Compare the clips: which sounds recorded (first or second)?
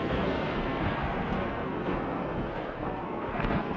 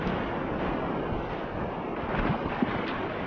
second